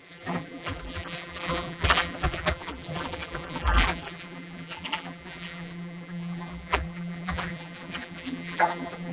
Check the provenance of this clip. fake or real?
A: fake